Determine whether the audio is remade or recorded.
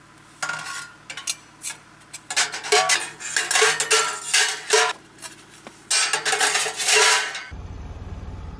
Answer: recorded